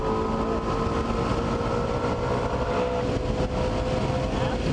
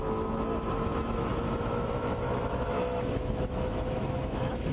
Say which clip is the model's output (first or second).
second